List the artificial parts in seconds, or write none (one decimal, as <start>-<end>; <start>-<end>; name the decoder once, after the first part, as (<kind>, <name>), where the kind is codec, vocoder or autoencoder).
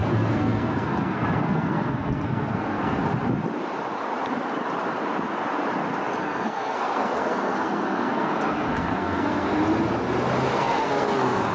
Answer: 0.0-3.0 (codec, SNAC); 6.2-9.5; 10.5-11.5